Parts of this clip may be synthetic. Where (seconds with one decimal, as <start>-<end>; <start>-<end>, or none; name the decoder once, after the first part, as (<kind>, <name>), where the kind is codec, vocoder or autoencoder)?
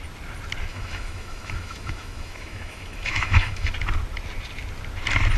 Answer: 0.7-3.7 (autoencoder, DAC-VAE)